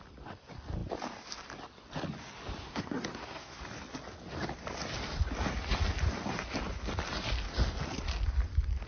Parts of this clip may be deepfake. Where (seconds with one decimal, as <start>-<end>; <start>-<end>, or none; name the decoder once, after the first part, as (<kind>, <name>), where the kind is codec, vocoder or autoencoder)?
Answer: 2.6-3.6 (codec, SNAC)